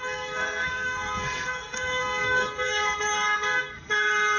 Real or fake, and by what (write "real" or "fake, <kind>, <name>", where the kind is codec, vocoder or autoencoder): fake, codec, SNAC